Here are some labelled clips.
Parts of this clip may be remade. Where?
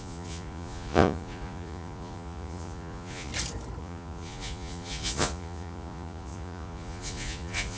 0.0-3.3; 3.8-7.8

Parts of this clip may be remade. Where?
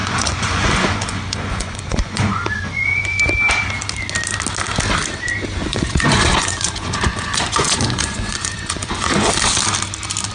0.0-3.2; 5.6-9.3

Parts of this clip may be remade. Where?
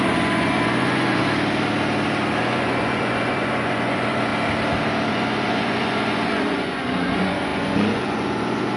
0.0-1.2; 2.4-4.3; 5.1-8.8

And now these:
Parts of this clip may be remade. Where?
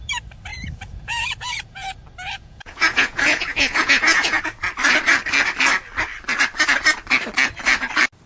0.5-2.0; 2.4-4.4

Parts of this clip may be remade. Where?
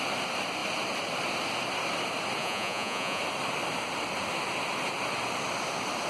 2.4-3.2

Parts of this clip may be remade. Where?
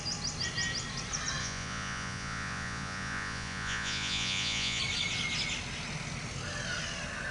1.4-4.8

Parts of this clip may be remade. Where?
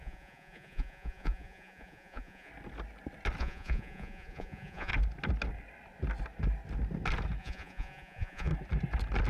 0.0-2.5; 3.4-4.9; 7.4-8.5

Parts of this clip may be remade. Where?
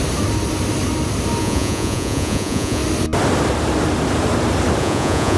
1.4-2.8; 4.8-5.4